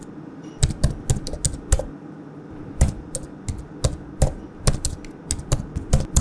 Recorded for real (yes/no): yes